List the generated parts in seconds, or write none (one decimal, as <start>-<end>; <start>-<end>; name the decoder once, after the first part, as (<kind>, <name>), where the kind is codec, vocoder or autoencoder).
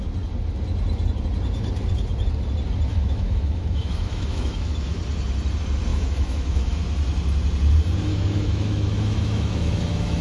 2.9-5.0 (autoencoder, DAC-VAE); 5.9-6.8; 8.1-10.2